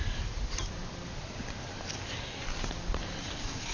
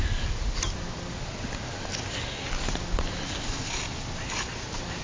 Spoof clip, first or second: first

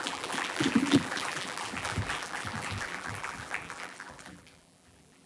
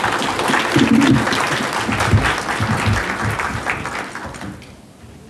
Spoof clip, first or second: first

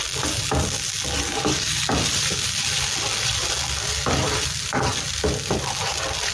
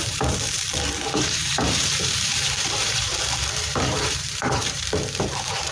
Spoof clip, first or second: second